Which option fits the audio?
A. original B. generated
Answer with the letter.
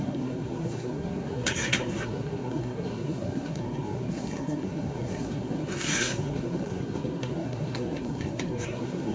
B